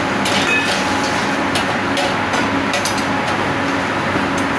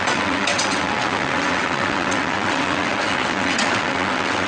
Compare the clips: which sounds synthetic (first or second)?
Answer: second